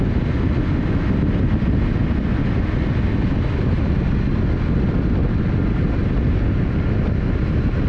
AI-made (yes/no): no